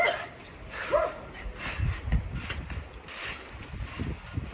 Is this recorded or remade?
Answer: recorded